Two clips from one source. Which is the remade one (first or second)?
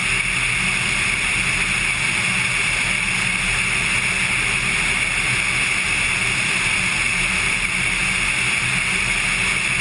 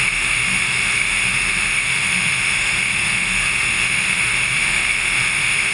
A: second